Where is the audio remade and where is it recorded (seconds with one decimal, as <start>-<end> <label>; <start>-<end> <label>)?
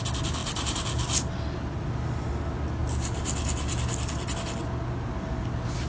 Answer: 0.0-5.9 recorded